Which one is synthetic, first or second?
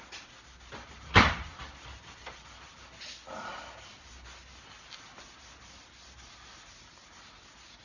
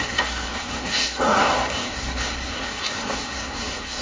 second